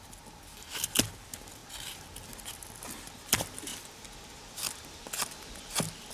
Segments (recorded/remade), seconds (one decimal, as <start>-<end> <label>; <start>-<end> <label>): 0.0-6.1 recorded